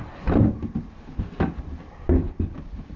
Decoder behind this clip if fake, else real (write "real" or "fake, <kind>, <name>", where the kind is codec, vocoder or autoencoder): real